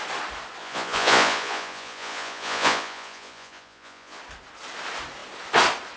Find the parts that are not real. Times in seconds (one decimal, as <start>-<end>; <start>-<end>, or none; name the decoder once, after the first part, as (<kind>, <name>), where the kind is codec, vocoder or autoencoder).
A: 0.6-4.2 (vocoder, Vocos)